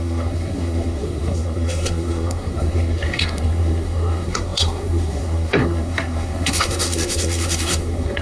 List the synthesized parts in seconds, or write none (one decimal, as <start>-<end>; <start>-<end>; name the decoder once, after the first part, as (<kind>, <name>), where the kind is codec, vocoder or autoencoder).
0.0-8.2 (codec, SNAC)

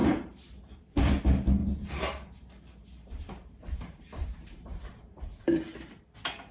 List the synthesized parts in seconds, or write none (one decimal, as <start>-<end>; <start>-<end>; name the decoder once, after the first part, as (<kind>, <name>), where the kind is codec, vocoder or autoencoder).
0.0-1.2 (vocoder, BigVGAN v2); 1.6-5.5

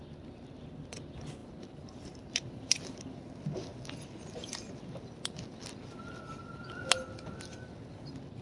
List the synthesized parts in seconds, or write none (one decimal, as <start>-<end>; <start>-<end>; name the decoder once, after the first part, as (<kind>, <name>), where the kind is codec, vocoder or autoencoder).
1.4-2.3 (vocoder, BigVGAN v2)

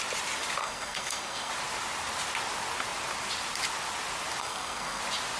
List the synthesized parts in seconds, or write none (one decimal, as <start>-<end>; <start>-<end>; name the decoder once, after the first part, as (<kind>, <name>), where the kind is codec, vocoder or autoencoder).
0.6-1.5 (codec, SNAC); 4.4-5.0

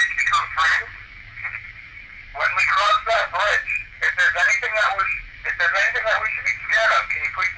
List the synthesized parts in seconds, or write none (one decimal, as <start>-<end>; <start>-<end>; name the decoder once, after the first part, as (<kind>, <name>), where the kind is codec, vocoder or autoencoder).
none